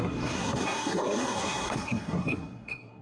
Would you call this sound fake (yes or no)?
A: yes